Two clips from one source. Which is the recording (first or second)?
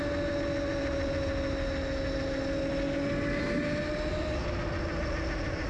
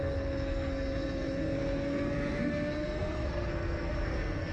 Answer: first